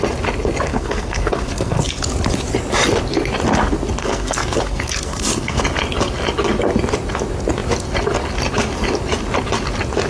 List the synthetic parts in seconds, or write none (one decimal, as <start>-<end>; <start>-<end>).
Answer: 0.7-1.9; 4.0-5.6